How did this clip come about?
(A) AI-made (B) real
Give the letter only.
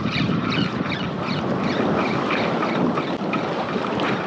B